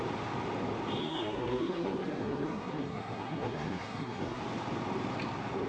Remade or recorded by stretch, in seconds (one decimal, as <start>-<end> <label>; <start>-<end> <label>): 0.0-1.0 recorded; 1.0-4.4 remade; 4.4-5.7 recorded